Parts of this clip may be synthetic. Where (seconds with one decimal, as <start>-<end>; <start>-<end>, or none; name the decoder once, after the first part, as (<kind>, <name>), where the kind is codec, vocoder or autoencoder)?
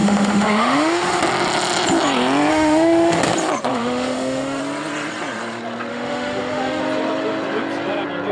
0.0-1.2 (autoencoder, DAC-VAE); 2.5-3.2; 3.7-4.6; 5.9-6.8